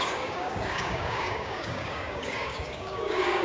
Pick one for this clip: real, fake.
fake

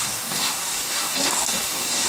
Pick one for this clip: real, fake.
fake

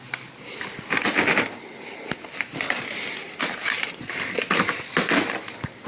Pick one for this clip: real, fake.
real